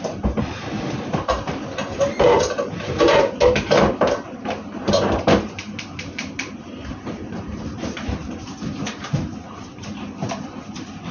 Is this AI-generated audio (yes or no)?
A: yes